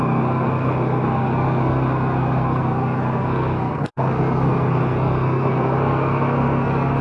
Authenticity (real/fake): fake